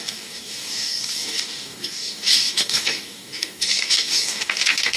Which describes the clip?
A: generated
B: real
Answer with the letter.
A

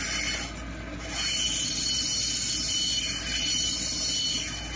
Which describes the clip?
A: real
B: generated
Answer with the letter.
A